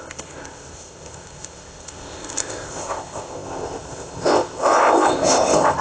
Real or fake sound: fake